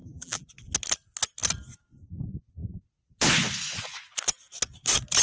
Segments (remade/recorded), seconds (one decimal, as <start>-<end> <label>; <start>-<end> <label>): 0.0-0.5 remade; 0.5-5.2 recorded